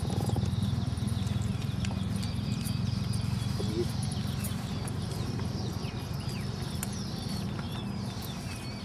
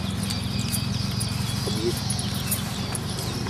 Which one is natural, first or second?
second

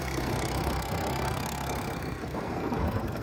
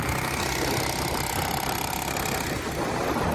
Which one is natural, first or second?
second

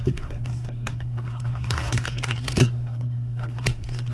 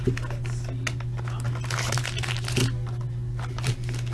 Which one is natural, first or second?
second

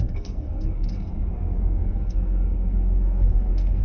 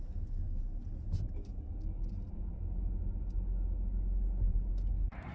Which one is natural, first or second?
second